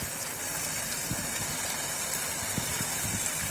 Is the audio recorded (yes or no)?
no